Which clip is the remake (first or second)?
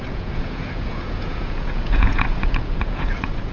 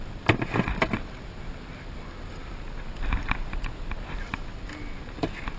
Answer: first